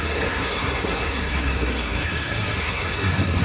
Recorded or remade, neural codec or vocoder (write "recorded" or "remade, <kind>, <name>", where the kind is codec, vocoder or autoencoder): remade, codec, SNAC